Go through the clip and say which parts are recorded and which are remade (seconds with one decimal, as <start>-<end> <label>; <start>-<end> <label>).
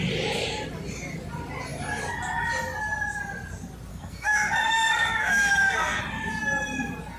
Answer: 0.0-3.9 recorded; 3.9-6.0 remade; 6.0-7.2 recorded